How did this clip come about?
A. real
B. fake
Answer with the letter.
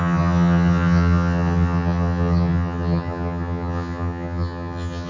B